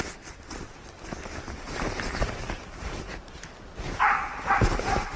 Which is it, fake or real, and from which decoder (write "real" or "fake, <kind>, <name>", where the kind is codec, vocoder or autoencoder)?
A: fake, vocoder, BigVGAN v2